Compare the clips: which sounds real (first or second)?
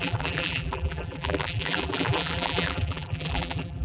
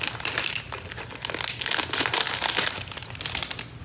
second